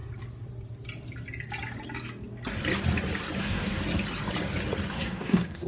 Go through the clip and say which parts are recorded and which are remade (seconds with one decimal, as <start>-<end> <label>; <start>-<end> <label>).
0.0-3.4 recorded; 3.4-3.8 remade; 3.8-4.9 recorded; 4.9-5.7 remade